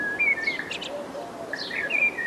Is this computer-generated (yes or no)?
no